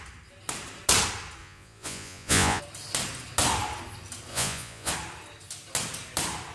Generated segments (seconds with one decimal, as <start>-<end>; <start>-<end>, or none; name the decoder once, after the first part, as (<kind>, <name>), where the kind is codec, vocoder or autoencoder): 1.4-2.6 (vocoder, Vocos); 4.3-4.9